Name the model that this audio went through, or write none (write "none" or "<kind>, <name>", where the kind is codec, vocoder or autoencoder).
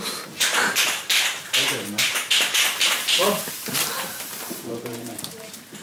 vocoder, BigVGAN v2